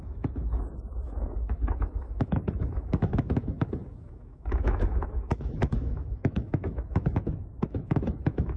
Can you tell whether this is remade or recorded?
remade